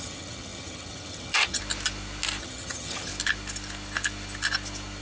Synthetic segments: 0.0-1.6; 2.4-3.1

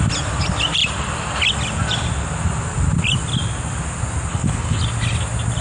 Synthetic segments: 4.3-4.8

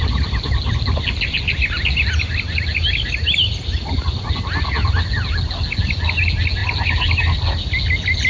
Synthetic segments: none

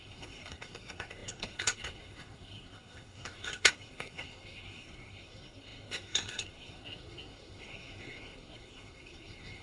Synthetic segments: 0.0-9.6

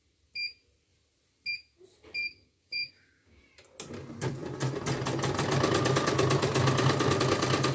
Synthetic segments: 2.2-3.4

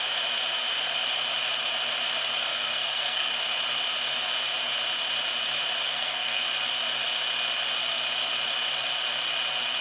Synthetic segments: 2.5-3.3; 5.8-6.4